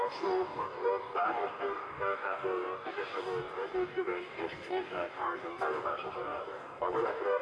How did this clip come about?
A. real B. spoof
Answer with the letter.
B